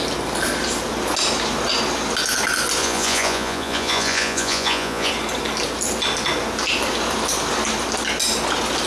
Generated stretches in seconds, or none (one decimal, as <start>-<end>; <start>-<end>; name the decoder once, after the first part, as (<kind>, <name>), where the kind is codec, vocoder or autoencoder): 2.8-5.1 (vocoder, Vocos)